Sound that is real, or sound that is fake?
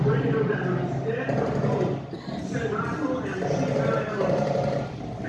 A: real